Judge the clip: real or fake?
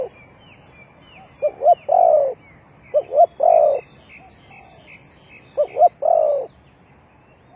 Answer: real